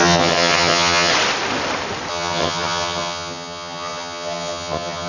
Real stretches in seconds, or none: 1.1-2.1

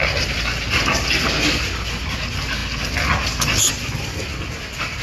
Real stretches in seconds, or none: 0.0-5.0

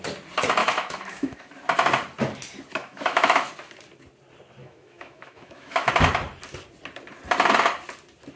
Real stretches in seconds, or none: 0.0-0.6; 1.5-2.8; 3.5-4.6; 5.9-8.4

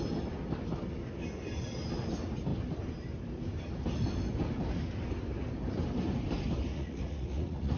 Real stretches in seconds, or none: 0.0-6.7

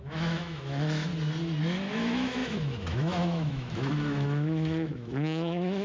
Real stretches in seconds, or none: 1.1-1.9

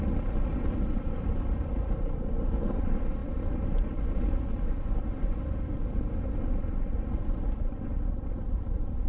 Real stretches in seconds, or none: 3.2-6.6